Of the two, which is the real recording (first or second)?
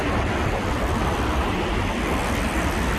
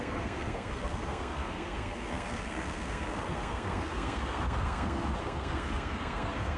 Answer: first